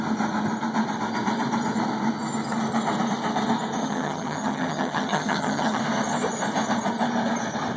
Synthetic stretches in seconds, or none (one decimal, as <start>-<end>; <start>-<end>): 3.8-5.8